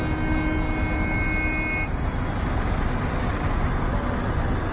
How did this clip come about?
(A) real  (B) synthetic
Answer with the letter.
A